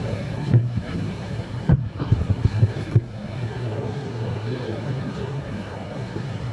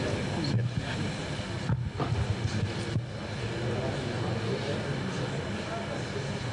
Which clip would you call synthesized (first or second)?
first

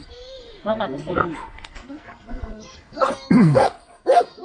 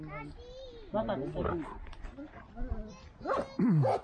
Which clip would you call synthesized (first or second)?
first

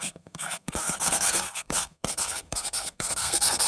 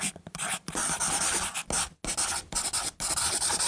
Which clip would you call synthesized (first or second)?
first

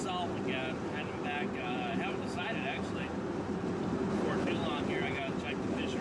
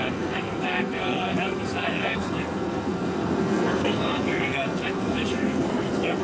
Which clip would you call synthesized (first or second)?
second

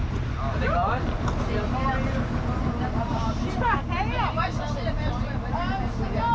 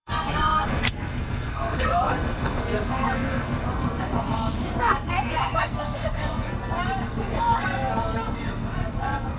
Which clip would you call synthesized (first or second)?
second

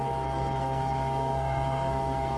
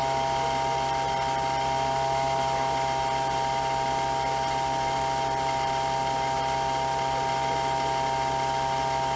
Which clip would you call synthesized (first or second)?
first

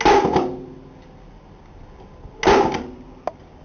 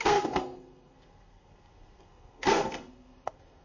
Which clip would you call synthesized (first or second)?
second